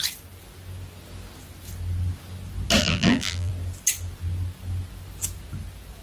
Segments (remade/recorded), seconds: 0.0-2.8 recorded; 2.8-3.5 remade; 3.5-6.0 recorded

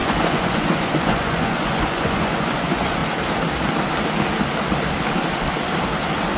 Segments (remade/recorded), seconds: 0.0-3.0 remade; 3.0-6.4 recorded

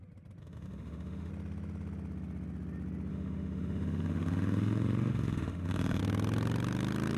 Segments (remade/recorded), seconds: 0.0-0.4 recorded; 0.4-1.3 remade; 1.3-3.1 recorded; 3.1-6.0 remade; 6.0-7.2 recorded